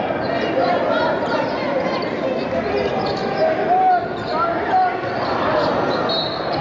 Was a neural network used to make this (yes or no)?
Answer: no